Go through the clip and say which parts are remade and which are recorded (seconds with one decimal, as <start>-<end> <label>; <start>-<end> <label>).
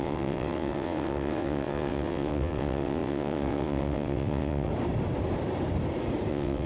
0.0-4.7 remade; 4.7-6.3 recorded; 6.3-6.7 remade